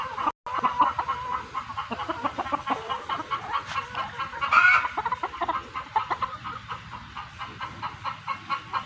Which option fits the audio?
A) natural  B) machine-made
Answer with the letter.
A